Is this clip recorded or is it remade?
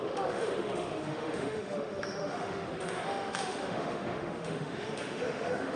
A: remade